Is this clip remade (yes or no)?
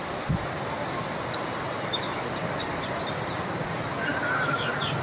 no